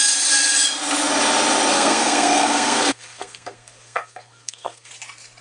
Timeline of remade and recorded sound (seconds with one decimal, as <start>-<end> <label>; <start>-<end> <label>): 0.0-1.7 recorded; 1.7-4.9 remade; 4.9-5.4 recorded